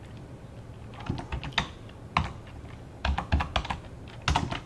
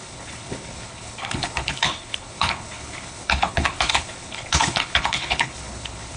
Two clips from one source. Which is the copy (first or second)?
second